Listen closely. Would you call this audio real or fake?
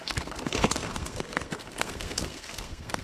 fake